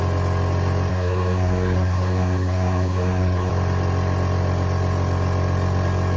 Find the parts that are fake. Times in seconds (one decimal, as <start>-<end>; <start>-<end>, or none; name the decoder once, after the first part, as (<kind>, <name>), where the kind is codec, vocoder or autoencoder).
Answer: 0.9-3.5 (codec, SNAC)